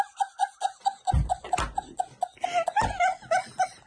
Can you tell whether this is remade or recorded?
recorded